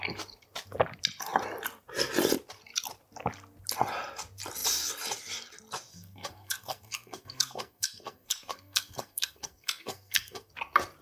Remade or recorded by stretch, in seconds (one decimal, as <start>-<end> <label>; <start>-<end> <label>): 0.0-5.9 recorded; 5.9-10.5 remade; 10.5-11.0 recorded